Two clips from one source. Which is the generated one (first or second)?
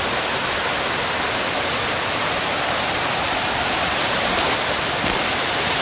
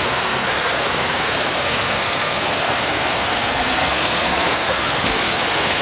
second